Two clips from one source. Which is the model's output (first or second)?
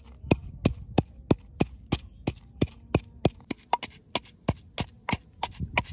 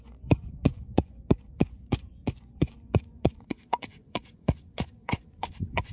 second